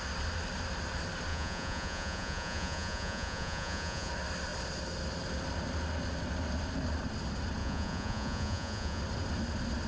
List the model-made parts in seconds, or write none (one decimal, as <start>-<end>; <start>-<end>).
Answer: 1.3-4.1; 7.6-9.0